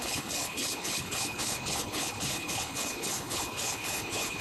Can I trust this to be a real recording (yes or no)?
no